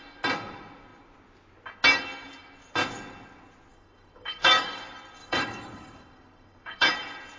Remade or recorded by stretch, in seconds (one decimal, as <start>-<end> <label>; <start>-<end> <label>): 0.0-3.7 recorded; 3.7-4.8 remade; 4.8-5.2 recorded; 5.2-6.9 remade; 6.9-7.4 recorded